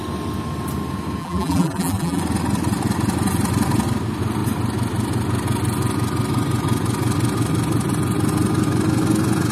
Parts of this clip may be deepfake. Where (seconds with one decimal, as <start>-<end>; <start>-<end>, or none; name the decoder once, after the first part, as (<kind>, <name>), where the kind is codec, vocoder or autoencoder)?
1.2-2.2 (vocoder, BigVGAN v2)